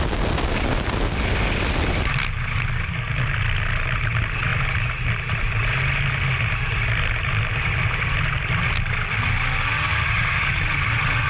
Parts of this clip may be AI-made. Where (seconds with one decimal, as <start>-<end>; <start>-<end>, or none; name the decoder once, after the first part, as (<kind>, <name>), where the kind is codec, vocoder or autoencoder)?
none